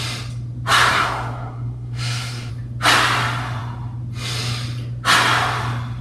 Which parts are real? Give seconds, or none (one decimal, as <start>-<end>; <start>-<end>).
0.0-0.9; 2.5-6.0